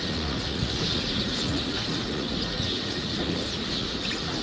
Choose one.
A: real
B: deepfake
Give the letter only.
B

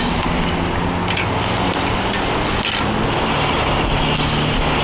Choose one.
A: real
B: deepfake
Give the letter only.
A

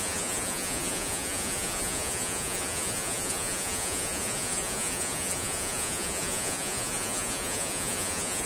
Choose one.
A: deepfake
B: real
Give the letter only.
A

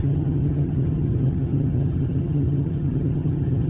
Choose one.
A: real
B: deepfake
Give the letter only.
B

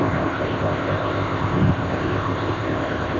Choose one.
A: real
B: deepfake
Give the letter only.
B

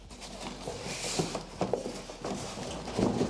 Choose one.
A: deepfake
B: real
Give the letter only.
B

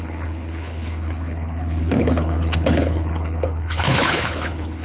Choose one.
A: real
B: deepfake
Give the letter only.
B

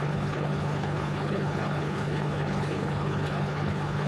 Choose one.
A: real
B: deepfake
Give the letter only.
B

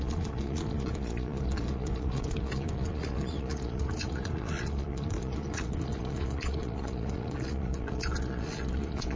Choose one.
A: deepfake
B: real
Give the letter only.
A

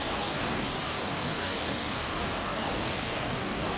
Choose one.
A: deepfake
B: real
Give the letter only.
A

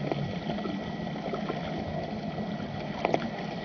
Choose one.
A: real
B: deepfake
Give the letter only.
A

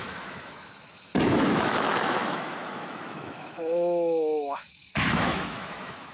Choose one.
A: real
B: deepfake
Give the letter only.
B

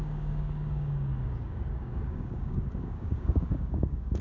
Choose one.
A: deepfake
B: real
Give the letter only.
A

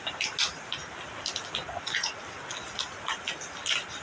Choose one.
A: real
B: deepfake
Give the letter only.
A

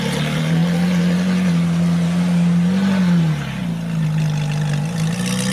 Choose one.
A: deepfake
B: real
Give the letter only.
B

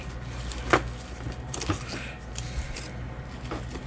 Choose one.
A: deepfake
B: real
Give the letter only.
B